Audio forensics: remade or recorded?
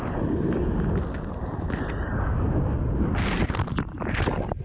recorded